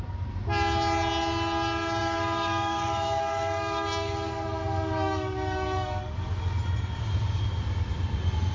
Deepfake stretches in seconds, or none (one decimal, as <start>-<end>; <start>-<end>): 2.0-6.3

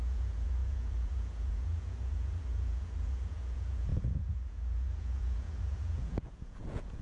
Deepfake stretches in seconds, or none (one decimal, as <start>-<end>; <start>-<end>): 0.0-7.0

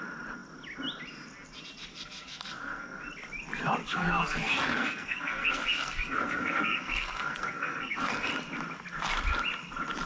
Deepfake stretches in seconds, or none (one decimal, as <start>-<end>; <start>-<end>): 1.9-3.0; 3.8-8.3

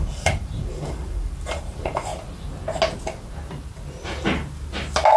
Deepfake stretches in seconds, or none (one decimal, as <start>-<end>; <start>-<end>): 0.0-2.1